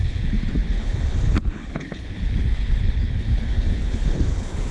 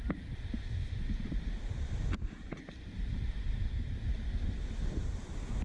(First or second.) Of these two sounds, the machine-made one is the first